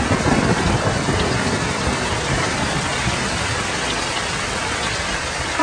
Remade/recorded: remade